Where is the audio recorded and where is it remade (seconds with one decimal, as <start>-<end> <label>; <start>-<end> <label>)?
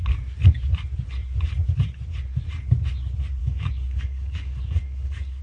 0.0-3.4 recorded; 3.4-5.4 remade